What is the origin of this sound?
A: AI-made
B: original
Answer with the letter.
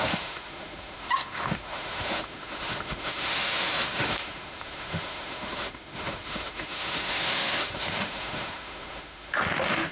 A